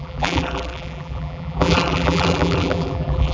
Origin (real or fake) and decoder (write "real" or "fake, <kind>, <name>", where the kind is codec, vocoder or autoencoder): fake, vocoder, BigVGAN v2